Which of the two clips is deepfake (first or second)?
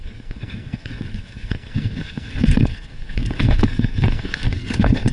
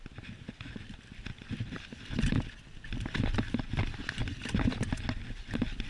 first